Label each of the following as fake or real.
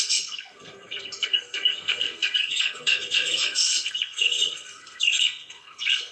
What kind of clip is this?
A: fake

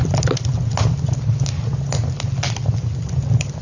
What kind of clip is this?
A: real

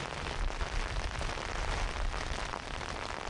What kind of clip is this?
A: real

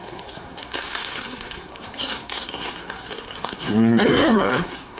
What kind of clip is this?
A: fake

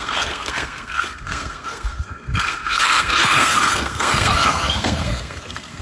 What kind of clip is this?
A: fake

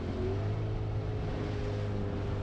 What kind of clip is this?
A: real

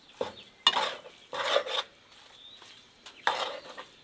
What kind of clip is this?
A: real